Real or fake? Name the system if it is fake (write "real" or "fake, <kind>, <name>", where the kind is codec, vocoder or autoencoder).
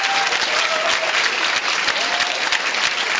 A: real